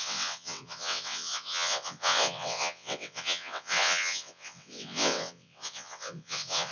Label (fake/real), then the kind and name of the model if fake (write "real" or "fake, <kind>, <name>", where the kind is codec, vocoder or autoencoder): fake, vocoder, WaveNeXt